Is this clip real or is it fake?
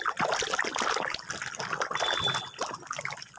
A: real